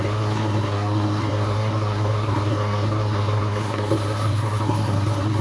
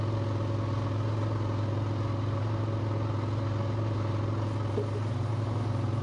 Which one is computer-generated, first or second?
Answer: first